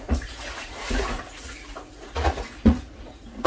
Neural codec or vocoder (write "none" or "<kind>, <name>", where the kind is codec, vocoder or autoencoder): vocoder, Vocos